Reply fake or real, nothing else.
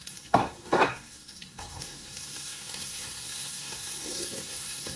fake